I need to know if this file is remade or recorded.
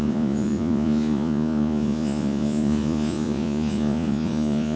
remade